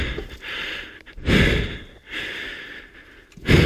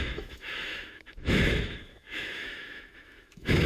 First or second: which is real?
first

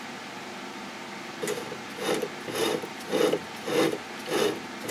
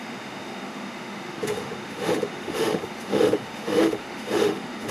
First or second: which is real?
first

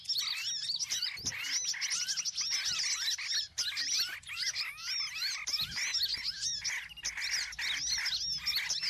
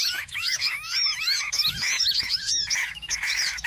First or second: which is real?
first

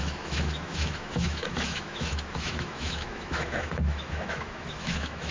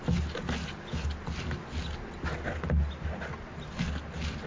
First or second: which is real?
second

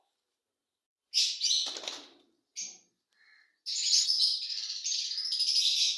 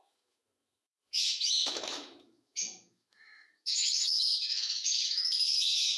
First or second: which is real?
first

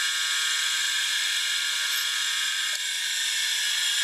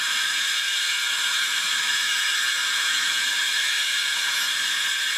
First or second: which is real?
first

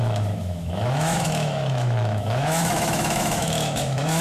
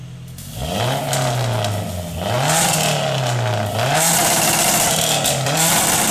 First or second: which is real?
second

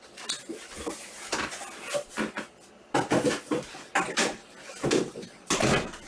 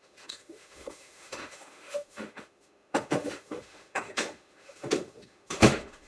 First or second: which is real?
first